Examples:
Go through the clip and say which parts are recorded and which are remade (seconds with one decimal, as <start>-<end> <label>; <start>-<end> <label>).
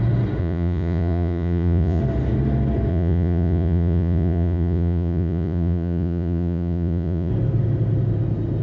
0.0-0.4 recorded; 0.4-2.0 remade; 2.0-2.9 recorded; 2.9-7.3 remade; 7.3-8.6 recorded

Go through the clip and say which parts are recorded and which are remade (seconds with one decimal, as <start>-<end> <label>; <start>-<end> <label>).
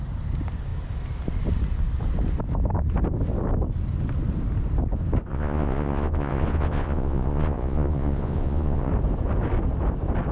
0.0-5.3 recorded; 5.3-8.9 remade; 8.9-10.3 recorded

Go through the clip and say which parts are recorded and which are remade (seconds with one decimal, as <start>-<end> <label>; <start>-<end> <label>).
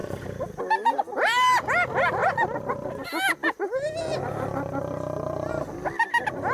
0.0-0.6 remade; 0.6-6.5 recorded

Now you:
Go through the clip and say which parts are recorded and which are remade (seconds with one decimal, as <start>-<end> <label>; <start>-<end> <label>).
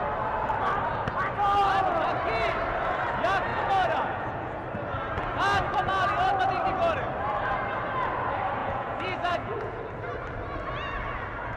0.0-3.5 recorded; 3.5-4.6 remade; 4.6-8.6 recorded; 8.6-9.8 remade; 9.8-11.6 recorded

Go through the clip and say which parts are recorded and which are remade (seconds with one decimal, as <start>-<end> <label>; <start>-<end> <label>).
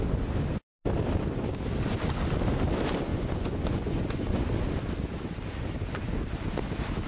0.0-3.1 recorded; 3.1-4.5 remade; 4.5-7.1 recorded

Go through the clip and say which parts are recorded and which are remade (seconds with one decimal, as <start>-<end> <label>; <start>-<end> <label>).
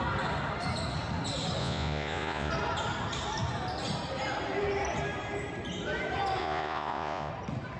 0.0-1.6 recorded; 1.6-2.5 remade; 2.5-6.4 recorded; 6.4-7.3 remade; 7.3-7.8 recorded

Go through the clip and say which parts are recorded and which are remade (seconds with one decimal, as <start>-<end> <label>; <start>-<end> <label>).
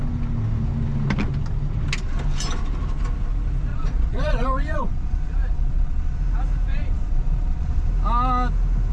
0.0-3.7 recorded; 3.7-6.2 remade; 6.2-6.7 recorded; 6.7-7.9 remade; 7.9-8.9 recorded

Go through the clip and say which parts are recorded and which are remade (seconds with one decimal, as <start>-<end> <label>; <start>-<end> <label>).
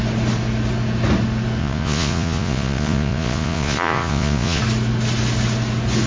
0.0-1.6 recorded; 1.6-4.6 remade; 4.6-6.1 recorded